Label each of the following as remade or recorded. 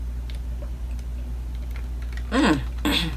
recorded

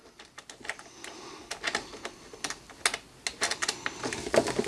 recorded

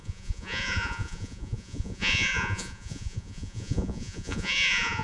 remade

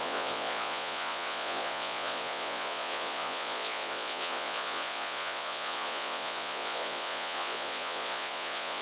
remade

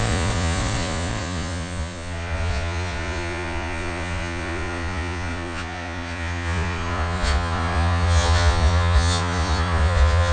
remade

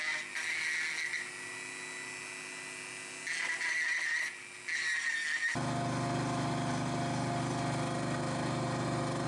recorded